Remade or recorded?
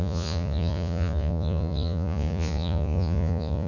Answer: remade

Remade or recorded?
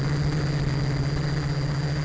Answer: recorded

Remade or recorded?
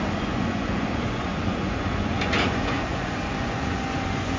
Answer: remade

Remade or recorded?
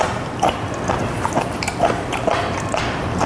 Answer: recorded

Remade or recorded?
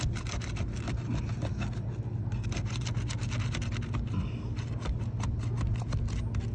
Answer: recorded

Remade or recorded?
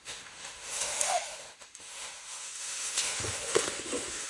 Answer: remade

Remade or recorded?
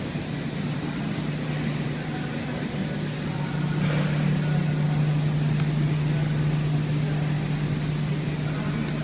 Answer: recorded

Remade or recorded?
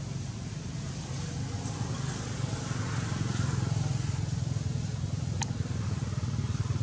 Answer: recorded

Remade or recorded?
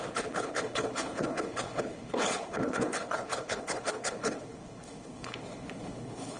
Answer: remade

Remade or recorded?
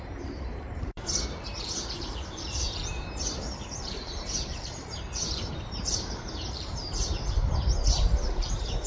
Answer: remade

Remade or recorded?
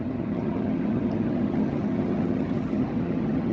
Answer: remade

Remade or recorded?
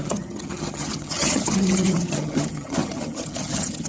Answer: remade